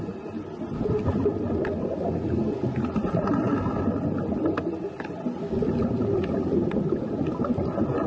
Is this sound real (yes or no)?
yes